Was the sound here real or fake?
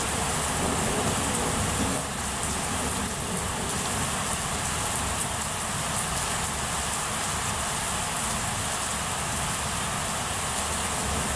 real